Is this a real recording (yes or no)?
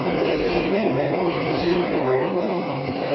no